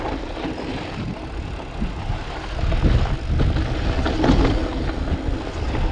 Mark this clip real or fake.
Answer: real